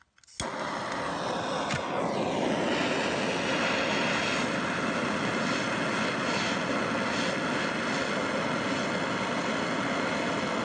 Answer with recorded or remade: recorded